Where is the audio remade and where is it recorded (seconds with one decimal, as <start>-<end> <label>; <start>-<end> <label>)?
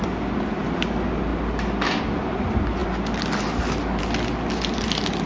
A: 0.0-5.3 recorded